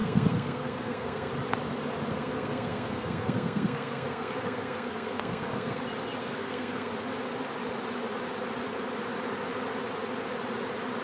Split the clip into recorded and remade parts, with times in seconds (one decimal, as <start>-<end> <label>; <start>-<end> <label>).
0.0-1.3 remade; 1.3-2.1 recorded; 2.1-5.8 remade; 5.8-6.2 recorded; 6.2-6.9 remade; 6.9-11.0 recorded